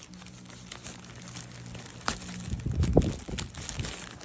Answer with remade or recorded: recorded